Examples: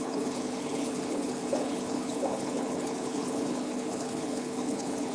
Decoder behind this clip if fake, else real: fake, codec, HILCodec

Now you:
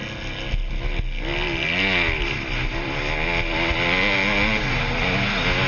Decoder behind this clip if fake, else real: real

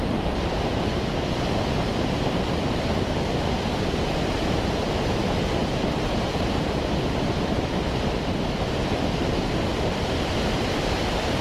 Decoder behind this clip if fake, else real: fake, vocoder, BigVGAN v2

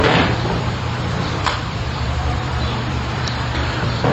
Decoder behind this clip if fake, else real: fake, vocoder, BigVGAN v2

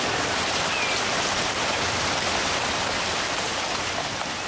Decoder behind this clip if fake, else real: real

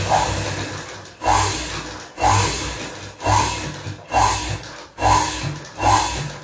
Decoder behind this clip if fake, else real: real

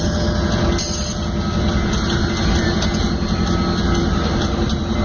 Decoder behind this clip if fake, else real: real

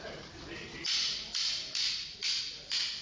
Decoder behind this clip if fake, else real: real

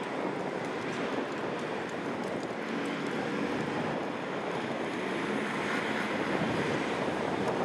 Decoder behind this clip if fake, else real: real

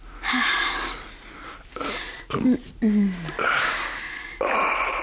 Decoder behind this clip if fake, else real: real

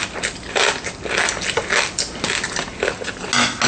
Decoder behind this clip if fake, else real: real